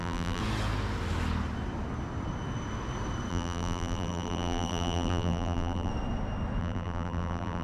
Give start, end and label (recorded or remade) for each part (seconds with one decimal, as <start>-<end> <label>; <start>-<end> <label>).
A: 0.0-0.4 remade; 0.4-3.3 recorded; 3.3-5.9 remade; 5.9-6.6 recorded; 6.6-7.6 remade